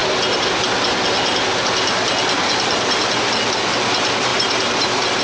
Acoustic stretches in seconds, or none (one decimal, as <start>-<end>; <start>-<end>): 0.0-4.3